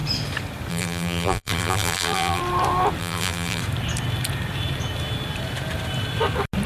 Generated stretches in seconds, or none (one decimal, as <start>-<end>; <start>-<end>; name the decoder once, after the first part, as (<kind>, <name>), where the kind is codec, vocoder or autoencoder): 0.7-2.4 (vocoder, BigVGAN v2); 3.0-3.6